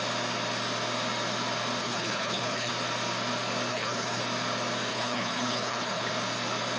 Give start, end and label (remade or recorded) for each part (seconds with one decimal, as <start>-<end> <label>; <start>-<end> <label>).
0.0-1.8 recorded; 1.8-2.7 remade; 2.7-3.7 recorded; 3.7-4.2 remade; 4.2-4.9 recorded; 4.9-6.1 remade; 6.1-6.8 recorded